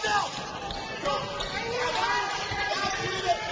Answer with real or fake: real